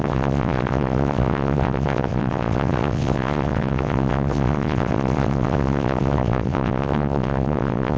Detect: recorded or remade remade